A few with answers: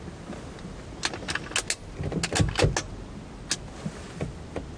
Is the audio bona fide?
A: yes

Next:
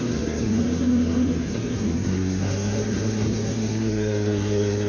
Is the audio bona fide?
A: no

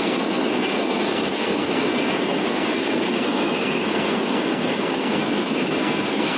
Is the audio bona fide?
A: no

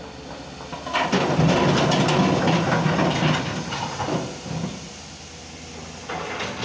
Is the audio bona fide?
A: yes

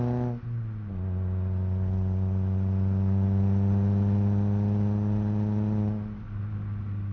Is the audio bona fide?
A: yes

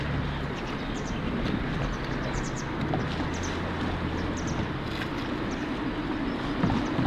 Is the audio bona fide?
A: yes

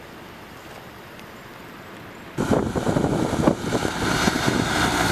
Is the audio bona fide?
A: yes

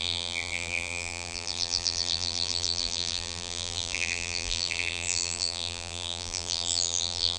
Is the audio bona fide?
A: no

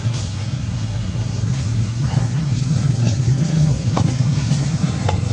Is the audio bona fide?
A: no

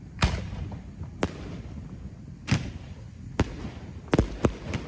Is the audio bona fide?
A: yes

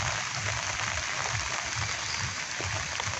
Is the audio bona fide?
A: yes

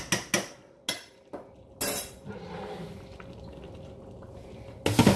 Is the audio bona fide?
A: yes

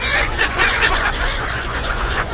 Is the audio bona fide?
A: no